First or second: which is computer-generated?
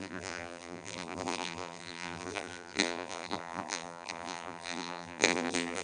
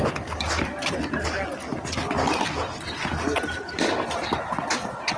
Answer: first